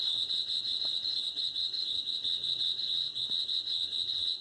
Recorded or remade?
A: remade